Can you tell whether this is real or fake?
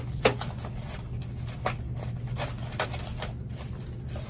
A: real